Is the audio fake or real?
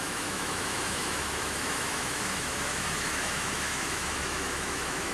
fake